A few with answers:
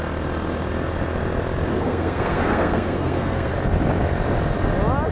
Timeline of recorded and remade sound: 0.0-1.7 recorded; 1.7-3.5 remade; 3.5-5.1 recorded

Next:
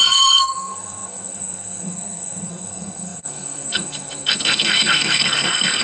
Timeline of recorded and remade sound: 0.0-5.8 remade